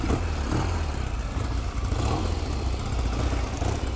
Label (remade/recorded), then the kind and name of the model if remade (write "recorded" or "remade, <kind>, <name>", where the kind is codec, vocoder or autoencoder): recorded